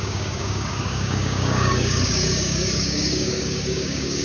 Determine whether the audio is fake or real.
fake